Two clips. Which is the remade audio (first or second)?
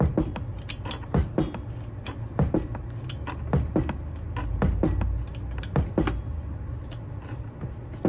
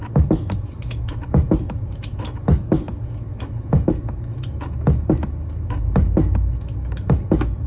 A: second